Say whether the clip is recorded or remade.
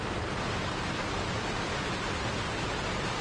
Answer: recorded